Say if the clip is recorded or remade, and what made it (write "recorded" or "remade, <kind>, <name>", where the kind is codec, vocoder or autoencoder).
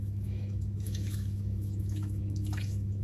remade, autoencoder, DAC-VAE